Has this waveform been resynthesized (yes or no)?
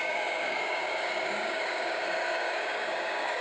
yes